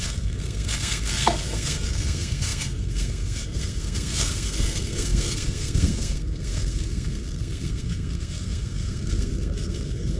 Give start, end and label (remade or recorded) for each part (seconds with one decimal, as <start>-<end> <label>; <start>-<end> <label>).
0.0-10.2 remade